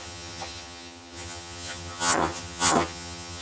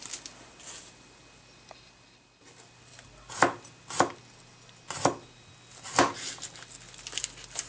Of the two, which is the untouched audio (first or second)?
second